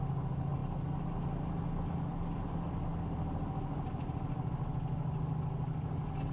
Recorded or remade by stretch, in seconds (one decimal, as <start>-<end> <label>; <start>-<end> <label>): 0.0-6.3 recorded